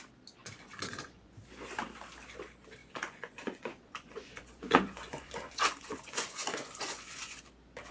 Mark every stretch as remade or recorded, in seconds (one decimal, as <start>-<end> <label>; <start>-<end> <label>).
0.0-0.4 recorded; 0.4-1.3 remade; 1.3-2.8 recorded; 2.8-7.4 remade; 7.4-7.9 recorded